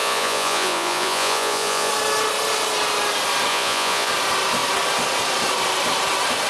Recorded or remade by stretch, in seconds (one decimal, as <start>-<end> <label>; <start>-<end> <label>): 0.0-1.9 remade; 1.9-3.5 recorded; 3.5-4.1 remade; 4.1-6.5 recorded